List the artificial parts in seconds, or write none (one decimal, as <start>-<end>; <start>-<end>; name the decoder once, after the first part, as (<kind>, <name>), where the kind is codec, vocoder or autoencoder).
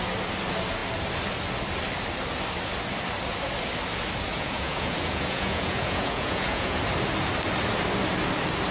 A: 4.3-6.8 (vocoder, Vocos)